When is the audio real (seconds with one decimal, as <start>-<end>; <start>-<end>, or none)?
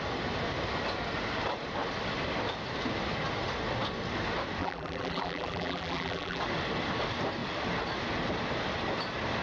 0.0-4.6; 6.4-9.4